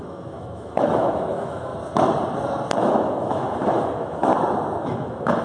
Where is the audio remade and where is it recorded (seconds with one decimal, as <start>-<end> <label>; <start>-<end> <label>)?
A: 0.0-1.7 remade; 1.7-2.8 recorded; 2.8-4.3 remade; 4.3-4.8 recorded; 4.8-5.4 remade